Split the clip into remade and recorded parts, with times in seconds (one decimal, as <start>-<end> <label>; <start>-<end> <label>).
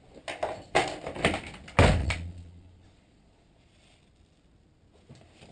0.0-2.0 recorded; 2.0-3.7 remade; 3.7-5.5 recorded